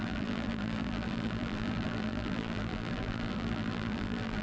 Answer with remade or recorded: remade